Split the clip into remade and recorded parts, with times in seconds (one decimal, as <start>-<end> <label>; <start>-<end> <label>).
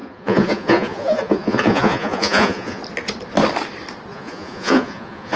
0.0-2.8 remade; 2.8-4.1 recorded; 4.1-5.4 remade